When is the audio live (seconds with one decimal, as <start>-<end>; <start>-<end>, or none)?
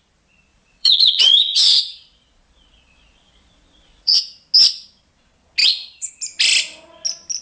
0.0-0.5; 4.2-5.6; 6.1-7.4